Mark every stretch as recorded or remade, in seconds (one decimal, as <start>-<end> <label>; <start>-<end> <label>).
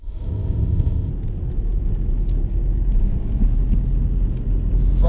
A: 0.0-1.1 remade; 1.1-5.1 recorded